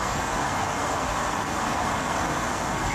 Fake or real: fake